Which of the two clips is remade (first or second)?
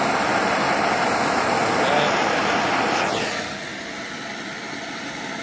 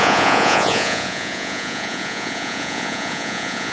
second